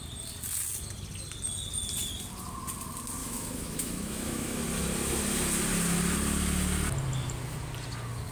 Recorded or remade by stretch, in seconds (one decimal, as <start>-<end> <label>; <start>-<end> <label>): 0.0-3.2 recorded; 3.2-4.6 remade; 4.6-8.3 recorded